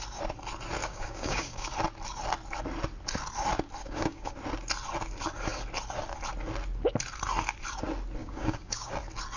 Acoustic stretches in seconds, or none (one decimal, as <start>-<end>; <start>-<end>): 0.0-0.8; 1.7-3.8; 4.3-8.2; 8.9-9.4